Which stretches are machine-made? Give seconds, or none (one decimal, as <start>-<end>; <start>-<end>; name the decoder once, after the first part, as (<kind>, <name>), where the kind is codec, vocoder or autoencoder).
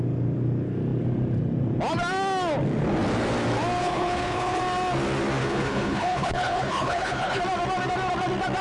3.8-4.6 (codec, HILCodec); 5.4-7.4